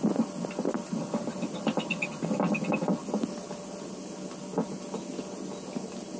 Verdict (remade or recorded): recorded